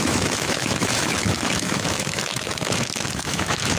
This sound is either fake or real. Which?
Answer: fake